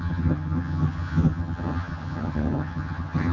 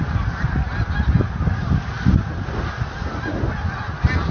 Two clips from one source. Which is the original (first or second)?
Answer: second